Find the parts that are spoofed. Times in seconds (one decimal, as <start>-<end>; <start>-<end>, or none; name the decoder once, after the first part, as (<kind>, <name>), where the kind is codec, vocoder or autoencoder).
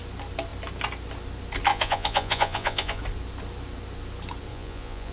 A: 1.7-3.0 (vocoder, Vocos); 4.5-5.1